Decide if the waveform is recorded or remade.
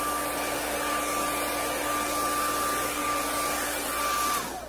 recorded